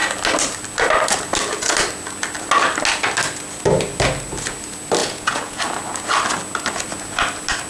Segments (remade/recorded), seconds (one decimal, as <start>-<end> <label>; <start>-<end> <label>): 0.0-5.0 recorded; 5.0-5.6 remade; 5.6-7.7 recorded